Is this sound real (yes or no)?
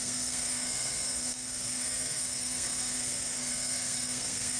no